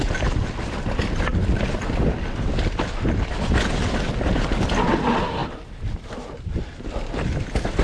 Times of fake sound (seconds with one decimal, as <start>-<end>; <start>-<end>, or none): none